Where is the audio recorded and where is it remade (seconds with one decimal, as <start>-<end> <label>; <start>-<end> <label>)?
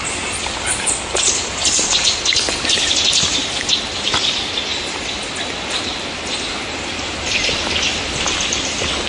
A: 0.0-9.1 recorded